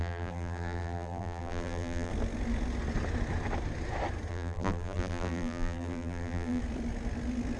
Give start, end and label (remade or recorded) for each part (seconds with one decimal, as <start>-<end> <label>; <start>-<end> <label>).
0.0-2.1 remade; 2.1-4.3 recorded; 4.3-6.6 remade; 6.6-7.6 recorded